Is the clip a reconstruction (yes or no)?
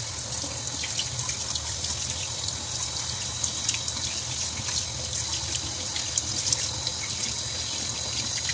no